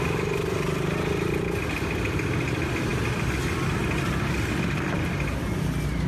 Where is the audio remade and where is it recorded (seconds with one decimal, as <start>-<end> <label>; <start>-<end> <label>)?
0.0-6.1 recorded